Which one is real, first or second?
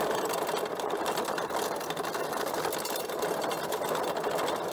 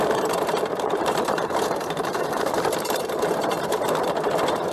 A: first